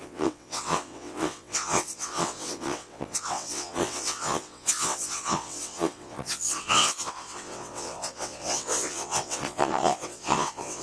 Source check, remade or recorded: remade